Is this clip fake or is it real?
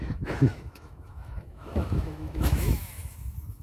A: fake